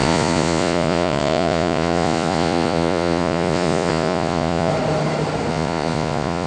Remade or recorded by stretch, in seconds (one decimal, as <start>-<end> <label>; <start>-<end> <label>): 0.0-4.7 remade; 4.7-5.5 recorded; 5.5-6.5 remade